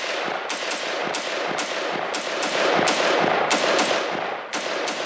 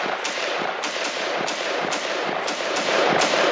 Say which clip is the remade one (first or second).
second